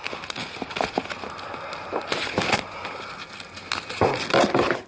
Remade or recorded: recorded